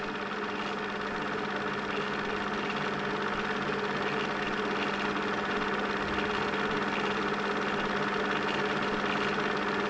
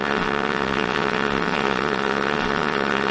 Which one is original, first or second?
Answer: first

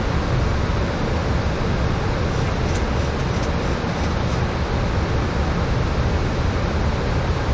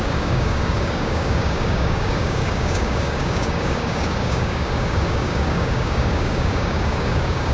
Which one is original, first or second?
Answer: first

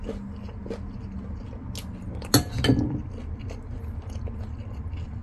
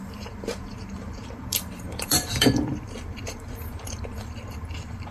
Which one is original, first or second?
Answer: first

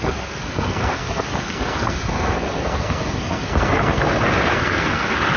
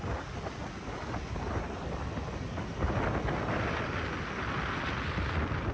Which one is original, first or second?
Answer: second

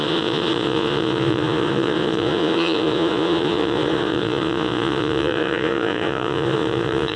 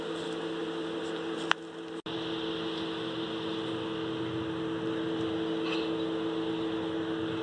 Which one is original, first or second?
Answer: second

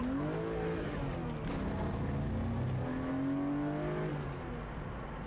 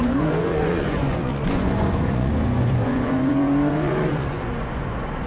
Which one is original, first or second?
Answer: first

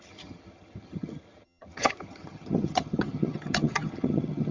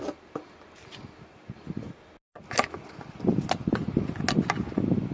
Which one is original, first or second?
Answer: second